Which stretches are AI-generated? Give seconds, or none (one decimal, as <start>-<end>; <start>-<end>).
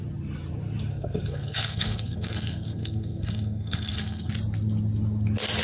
0.9-4.3